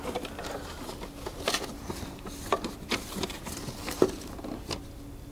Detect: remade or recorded recorded